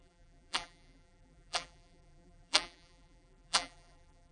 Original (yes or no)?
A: no